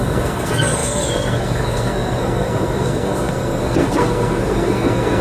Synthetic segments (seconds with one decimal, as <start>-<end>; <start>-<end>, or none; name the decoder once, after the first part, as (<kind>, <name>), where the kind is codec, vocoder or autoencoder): 0.0-5.2 (codec, SNAC)